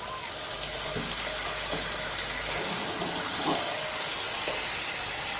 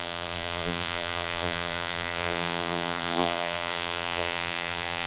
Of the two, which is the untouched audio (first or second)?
first